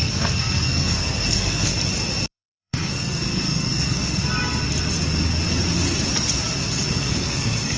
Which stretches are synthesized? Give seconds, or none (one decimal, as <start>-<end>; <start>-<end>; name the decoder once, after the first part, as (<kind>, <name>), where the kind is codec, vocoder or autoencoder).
0.0-1.7 (codec, SNAC); 2.3-4.2; 6.9-7.8